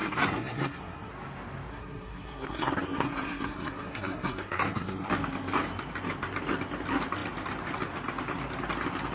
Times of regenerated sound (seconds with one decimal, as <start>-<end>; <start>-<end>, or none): 0.0-1.1; 1.7-5.1